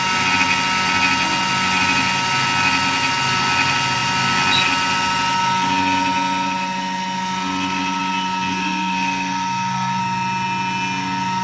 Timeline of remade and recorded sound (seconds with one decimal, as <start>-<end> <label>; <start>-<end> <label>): 0.0-8.6 recorded; 8.6-10.0 remade; 10.0-11.4 recorded